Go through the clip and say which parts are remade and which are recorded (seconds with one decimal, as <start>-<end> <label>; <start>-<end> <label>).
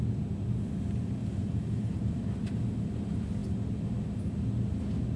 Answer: 0.0-1.2 recorded; 1.2-2.2 remade; 2.2-5.2 recorded